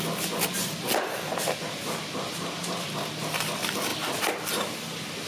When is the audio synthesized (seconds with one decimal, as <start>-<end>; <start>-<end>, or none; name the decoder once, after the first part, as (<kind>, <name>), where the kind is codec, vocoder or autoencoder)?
none